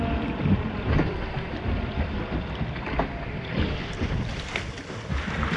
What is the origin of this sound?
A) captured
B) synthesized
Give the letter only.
B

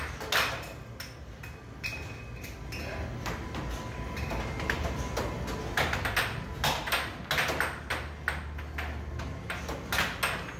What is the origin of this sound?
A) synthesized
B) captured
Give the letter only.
B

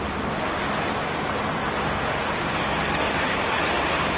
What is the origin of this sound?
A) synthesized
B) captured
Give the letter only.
B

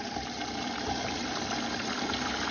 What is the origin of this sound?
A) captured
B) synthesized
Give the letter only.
A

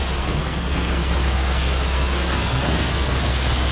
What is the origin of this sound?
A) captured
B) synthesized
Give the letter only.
B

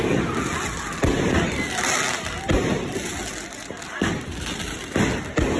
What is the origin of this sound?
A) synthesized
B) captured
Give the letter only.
B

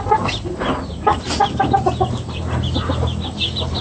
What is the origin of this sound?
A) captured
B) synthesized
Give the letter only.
B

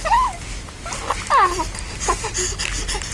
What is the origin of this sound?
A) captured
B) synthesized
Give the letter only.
A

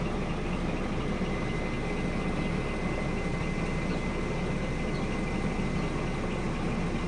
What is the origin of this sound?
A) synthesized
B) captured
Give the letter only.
B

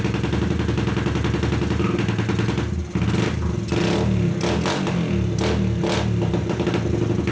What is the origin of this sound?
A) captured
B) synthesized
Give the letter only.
A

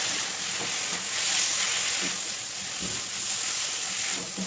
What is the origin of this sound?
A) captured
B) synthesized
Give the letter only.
A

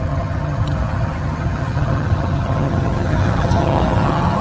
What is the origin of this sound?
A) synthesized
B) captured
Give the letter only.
A